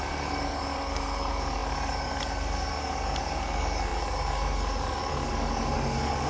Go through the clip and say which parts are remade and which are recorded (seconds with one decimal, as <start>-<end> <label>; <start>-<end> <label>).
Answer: 0.0-6.3 remade